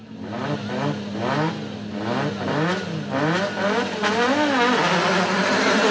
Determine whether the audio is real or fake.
real